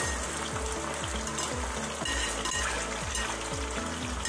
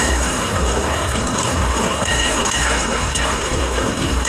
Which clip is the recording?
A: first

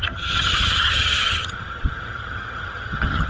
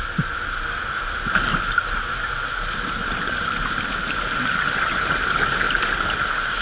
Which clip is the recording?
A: second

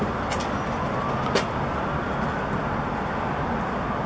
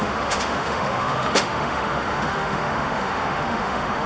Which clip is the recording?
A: first